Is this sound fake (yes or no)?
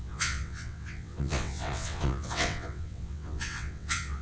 yes